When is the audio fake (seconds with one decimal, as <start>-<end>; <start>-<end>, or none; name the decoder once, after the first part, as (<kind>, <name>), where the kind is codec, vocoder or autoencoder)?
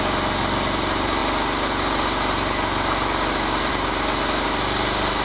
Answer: none